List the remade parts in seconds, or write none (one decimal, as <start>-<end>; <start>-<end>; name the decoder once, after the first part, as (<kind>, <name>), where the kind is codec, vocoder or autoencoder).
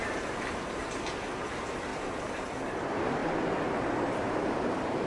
0.0-0.8 (vocoder, BigVGAN v2); 1.9-2.5